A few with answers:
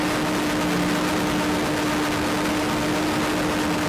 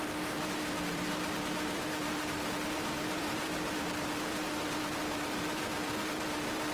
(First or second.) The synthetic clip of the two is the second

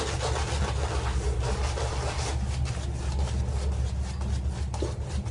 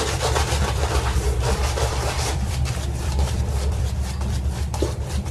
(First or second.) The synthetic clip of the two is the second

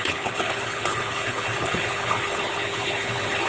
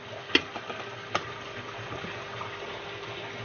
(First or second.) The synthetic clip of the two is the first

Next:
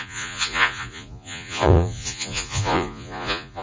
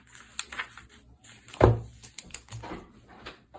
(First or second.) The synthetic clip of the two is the first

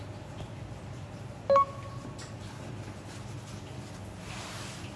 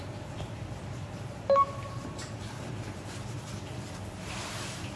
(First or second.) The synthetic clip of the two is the second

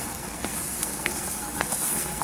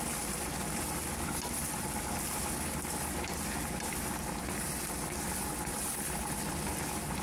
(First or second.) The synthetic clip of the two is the first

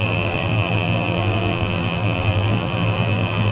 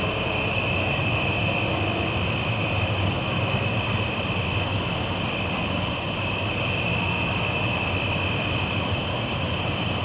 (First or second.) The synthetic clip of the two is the first